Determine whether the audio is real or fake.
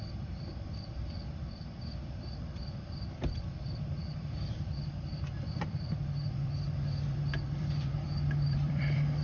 fake